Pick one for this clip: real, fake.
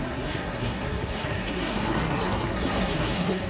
fake